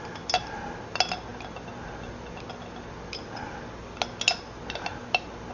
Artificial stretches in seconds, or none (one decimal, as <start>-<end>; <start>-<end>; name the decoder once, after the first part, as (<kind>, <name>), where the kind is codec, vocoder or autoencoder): none